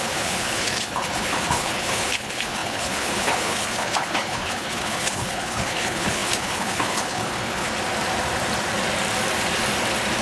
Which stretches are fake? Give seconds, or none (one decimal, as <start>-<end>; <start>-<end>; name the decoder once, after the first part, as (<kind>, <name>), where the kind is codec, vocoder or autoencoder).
0.0-7.7 (codec, HILCodec)